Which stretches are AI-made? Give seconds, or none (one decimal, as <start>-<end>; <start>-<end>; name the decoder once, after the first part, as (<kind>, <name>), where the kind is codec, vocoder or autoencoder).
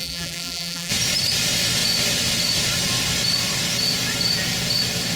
0.0-0.9 (vocoder, BigVGAN v2)